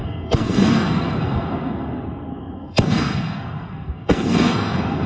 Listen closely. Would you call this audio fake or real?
fake